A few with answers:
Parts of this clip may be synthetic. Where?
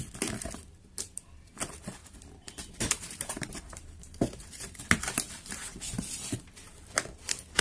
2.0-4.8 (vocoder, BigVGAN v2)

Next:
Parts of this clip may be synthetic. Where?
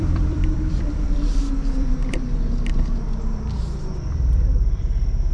0.0-2.0 (vocoder, BigVGAN v2); 4.0-5.3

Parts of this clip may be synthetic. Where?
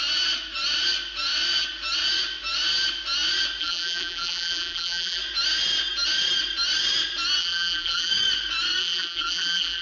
3.6-5.2 (vocoder, BigVGAN v2); 7.4-8.1; 8.8-9.8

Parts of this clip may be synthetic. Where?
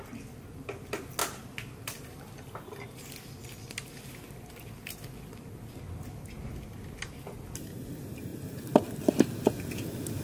1.2-4.1 (vocoder, BigVGAN v2); 8.3-9.1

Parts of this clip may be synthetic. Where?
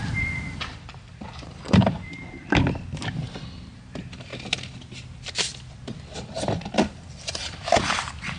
0.0-2.1 (vocoder, BigVGAN v2); 3.4-4.3; 6.2-8.4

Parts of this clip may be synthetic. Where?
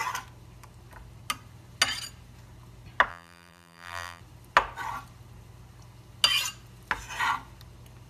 3.1-4.2 (vocoder, BigVGAN v2)